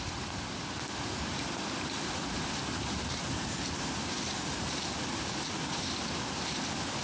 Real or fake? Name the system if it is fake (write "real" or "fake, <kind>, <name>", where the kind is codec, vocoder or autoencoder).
real